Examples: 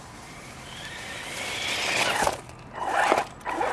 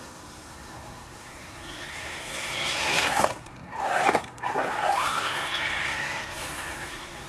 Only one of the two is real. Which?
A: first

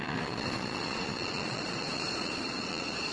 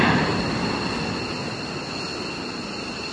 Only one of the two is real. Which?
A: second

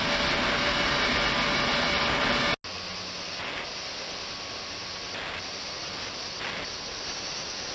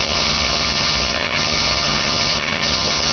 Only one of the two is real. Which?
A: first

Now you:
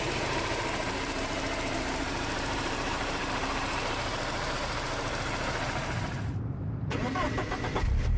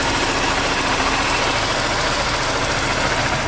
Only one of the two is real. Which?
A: second